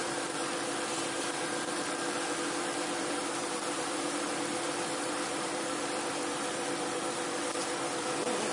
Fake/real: fake